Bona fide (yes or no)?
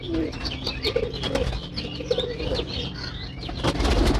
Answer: yes